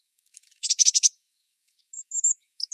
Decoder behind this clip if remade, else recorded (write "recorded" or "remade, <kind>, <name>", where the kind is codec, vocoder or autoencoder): remade, codec, DAC